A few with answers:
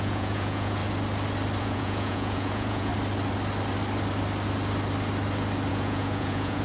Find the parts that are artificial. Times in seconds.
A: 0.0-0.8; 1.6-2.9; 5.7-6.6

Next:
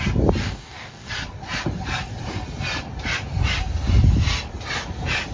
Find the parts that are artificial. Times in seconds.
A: 0.4-1.1

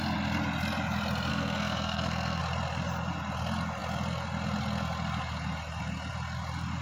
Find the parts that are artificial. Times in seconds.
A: 1.3-2.4

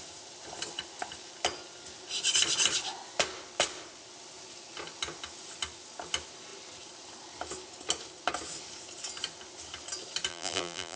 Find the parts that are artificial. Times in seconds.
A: 10.3-11.0

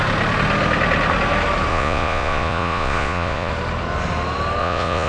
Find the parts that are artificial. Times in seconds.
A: 1.7-3.5; 4.6-5.1

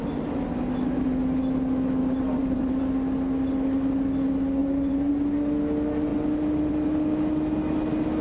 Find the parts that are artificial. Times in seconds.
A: 2.0-2.8; 4.6-5.1